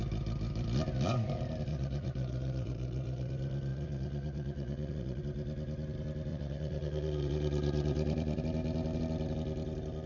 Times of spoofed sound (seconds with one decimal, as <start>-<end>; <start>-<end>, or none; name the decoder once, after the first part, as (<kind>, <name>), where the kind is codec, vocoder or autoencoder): 1.7-3.3 (vocoder, Vocos); 3.7-5.2; 6.3-8.4